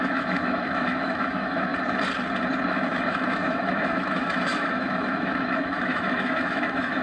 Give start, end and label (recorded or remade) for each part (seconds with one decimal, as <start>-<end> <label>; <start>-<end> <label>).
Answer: 0.0-1.7 remade; 1.7-2.7 recorded; 2.7-7.0 remade